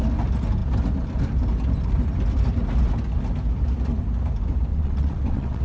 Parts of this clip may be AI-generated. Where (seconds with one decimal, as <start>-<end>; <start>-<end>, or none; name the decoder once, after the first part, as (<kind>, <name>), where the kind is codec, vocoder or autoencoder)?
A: 4.7-5.6 (vocoder, WaveNeXt)